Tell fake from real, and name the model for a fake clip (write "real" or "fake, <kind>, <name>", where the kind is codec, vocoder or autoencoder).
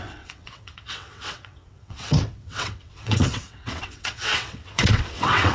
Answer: fake, vocoder, WaveNeXt